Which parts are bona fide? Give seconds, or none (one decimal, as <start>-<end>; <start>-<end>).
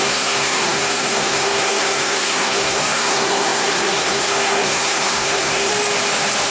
5.7-6.5